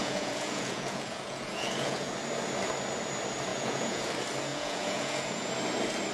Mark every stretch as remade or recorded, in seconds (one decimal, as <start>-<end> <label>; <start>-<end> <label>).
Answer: 0.0-2.1 remade; 2.1-3.5 recorded; 3.5-4.1 remade; 4.1-4.5 recorded; 4.5-5.5 remade; 5.5-6.1 recorded